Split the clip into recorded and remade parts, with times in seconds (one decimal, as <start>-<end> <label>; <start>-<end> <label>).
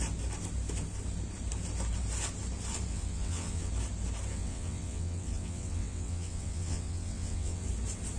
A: 0.0-2.9 recorded; 2.9-3.7 remade; 3.7-4.3 recorded; 4.3-7.7 remade; 7.7-8.2 recorded